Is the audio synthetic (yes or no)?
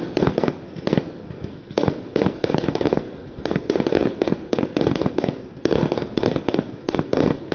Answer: yes